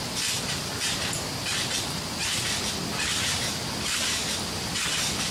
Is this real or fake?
real